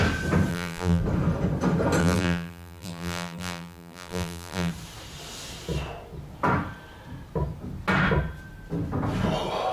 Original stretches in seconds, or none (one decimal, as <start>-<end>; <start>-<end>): 0.0-0.5; 1.0-2.0; 4.7-9.7